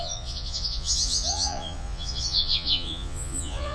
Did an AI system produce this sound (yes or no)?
yes